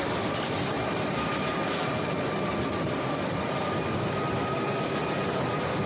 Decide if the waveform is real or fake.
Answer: real